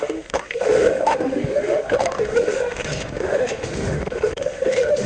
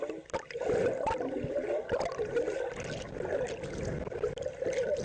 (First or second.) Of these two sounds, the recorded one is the second